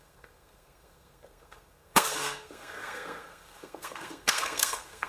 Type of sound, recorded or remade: remade